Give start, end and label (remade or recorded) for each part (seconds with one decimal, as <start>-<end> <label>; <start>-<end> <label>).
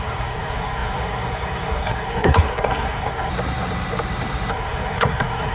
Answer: 0.0-3.3 remade; 3.3-4.5 recorded; 4.5-5.5 remade